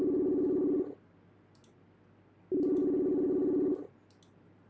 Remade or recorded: recorded